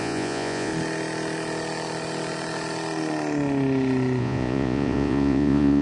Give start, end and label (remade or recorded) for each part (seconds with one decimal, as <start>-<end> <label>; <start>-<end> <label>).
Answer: 0.0-0.7 remade; 0.7-4.2 recorded; 4.2-5.8 remade